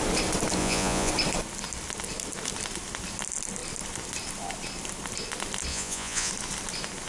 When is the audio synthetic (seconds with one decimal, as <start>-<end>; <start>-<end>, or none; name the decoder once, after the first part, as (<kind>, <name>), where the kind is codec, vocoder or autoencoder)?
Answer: 0.6-1.1 (vocoder, Vocos); 5.7-6.3